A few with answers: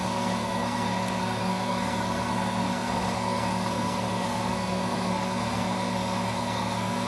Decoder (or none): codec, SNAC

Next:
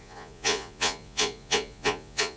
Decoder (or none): vocoder, Vocos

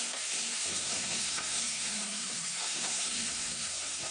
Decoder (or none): codec, SNAC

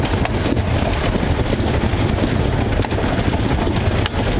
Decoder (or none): none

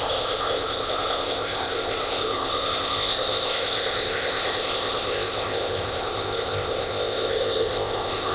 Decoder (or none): codec, ZipCodec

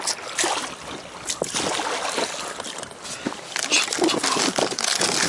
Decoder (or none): none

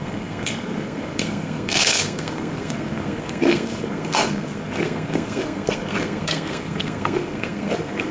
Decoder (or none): codec, SNAC